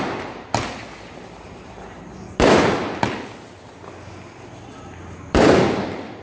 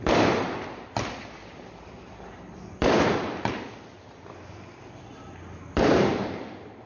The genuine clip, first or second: first